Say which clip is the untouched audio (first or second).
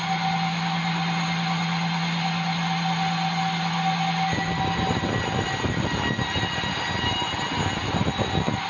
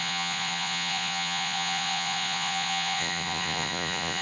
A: first